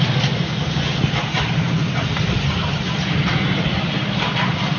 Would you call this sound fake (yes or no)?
no